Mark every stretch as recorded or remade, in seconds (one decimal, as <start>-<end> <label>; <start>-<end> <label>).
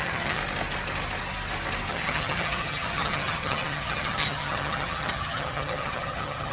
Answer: 0.0-0.4 remade; 0.4-1.9 recorded; 1.9-6.5 remade